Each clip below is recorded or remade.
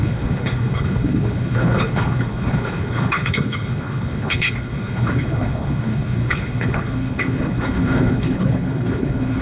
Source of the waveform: remade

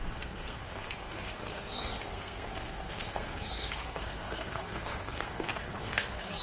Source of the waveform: remade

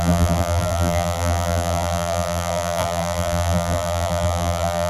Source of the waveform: remade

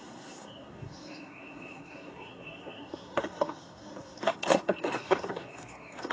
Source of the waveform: remade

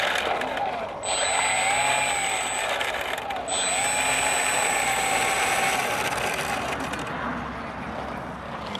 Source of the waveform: recorded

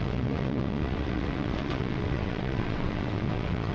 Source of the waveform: remade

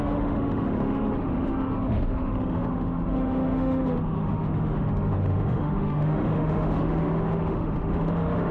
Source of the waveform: remade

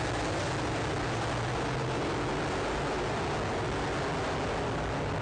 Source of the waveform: recorded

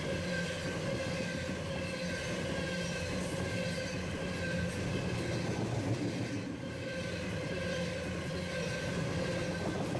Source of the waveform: recorded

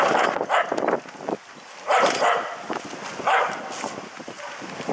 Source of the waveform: recorded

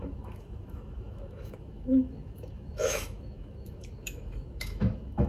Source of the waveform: remade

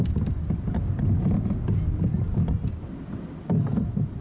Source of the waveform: recorded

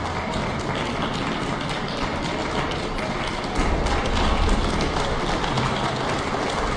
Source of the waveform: recorded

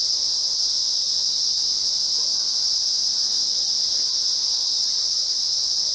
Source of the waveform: remade